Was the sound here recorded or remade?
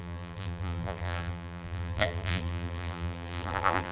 remade